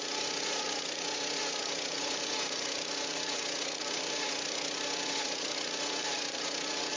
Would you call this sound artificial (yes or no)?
yes